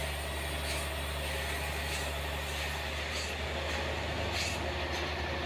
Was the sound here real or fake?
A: real